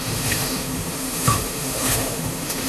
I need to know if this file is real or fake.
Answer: fake